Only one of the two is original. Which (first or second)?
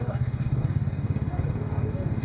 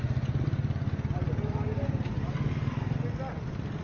second